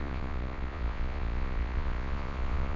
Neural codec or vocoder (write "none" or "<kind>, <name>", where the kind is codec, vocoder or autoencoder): vocoder, Vocos